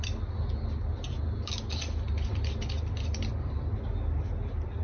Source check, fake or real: real